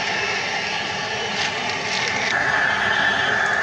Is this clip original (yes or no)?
yes